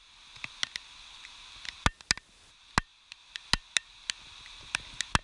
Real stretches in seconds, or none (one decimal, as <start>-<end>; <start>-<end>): 0.0-5.2